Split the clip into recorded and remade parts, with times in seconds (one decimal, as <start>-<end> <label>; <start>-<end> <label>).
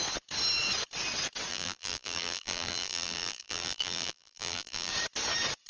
0.0-1.5 recorded; 1.5-4.9 remade; 4.9-5.7 recorded